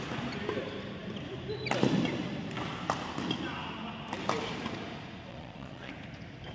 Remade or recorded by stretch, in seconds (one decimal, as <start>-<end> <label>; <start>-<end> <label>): 0.0-5.3 recorded; 5.3-5.9 remade; 5.9-6.5 recorded